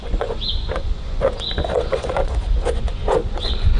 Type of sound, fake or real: fake